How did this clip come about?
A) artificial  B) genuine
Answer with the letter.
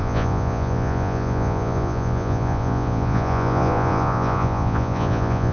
A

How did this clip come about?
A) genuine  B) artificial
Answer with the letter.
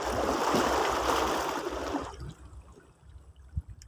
A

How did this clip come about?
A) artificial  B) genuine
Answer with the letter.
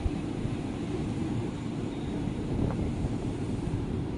A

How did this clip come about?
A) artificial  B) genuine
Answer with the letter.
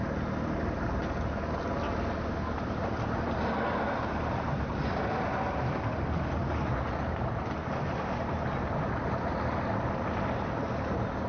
B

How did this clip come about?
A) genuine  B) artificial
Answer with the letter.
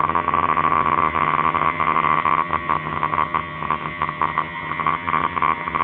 B